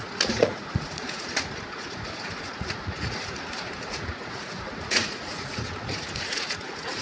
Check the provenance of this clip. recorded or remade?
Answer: remade